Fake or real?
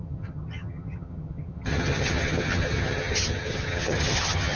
fake